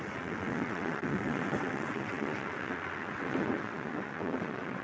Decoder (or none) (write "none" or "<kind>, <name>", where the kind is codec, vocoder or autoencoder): vocoder, WaveNeXt